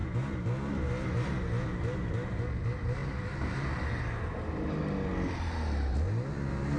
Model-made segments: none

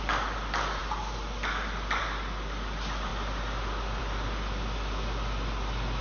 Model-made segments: none

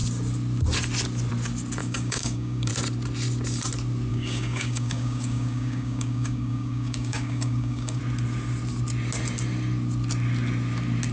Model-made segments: 1.8-2.7; 4.1-8.0

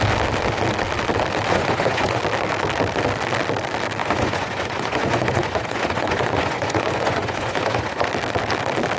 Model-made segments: 1.5-2.2; 4.0-8.1

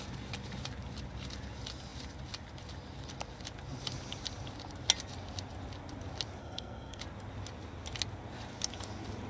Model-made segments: 6.4-7.0

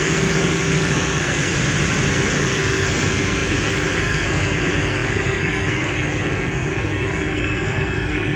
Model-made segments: 0.0-1.5; 2.1-8.4

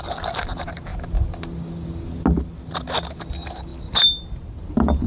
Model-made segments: none

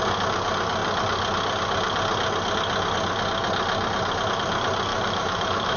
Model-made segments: 4.9-5.8